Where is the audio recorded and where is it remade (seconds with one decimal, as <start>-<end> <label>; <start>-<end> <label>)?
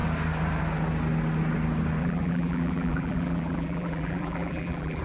0.0-2.0 recorded; 2.0-5.0 remade